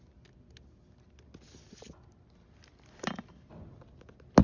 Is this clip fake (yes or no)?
no